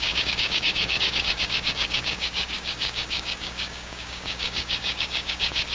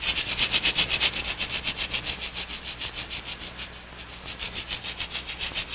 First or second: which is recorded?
second